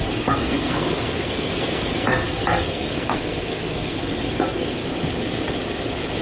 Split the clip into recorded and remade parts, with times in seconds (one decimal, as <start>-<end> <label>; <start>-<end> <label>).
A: 0.0-4.8 remade; 4.8-6.2 recorded